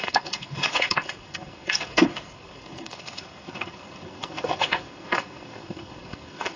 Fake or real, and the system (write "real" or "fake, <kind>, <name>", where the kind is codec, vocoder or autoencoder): fake, codec, SNAC